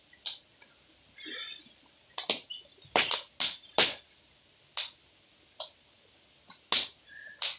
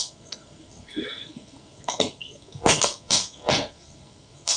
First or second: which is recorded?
first